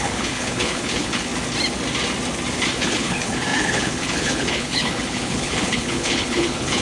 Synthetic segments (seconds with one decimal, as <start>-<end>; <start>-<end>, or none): 0.0-1.3; 2.8-6.8